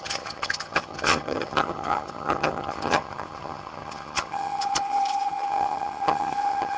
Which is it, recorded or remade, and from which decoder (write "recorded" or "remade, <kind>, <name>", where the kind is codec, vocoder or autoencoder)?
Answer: remade, vocoder, HiFi-GAN